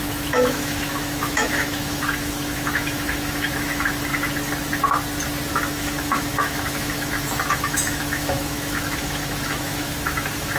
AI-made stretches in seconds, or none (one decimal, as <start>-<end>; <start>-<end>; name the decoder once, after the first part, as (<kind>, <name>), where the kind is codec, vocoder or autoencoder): 0.0-4.1 (autoencoder, DAC-VAE); 5.5-10.6